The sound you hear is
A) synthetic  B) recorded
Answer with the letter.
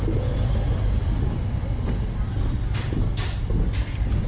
B